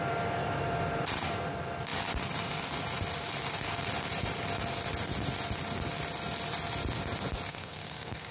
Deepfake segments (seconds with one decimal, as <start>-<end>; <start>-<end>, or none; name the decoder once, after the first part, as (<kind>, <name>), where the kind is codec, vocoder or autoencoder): 7.5-8.3 (codec, SNAC)